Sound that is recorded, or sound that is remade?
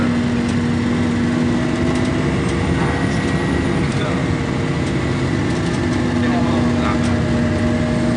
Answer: recorded